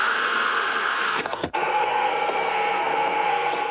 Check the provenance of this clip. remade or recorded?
remade